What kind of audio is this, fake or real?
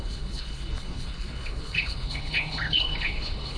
fake